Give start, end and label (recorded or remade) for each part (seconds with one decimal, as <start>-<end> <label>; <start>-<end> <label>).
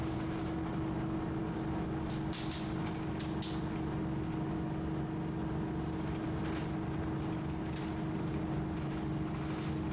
0.0-9.9 recorded